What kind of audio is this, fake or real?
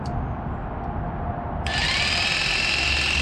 real